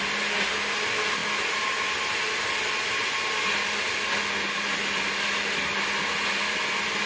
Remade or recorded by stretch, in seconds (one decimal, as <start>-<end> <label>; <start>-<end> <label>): 0.0-7.1 recorded